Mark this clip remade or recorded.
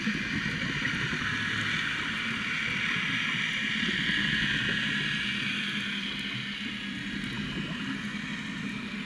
recorded